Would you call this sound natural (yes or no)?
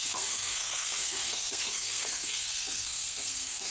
no